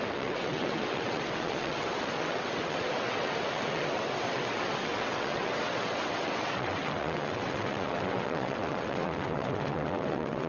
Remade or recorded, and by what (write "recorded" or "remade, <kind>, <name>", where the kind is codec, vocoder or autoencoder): remade, vocoder, WaveNeXt